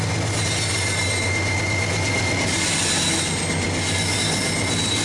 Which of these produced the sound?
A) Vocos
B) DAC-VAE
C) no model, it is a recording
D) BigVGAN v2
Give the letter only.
C